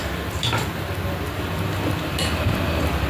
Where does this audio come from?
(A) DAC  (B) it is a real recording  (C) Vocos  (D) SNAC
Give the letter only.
B